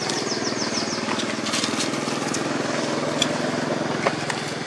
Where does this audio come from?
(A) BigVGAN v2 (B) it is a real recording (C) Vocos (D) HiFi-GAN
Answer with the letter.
B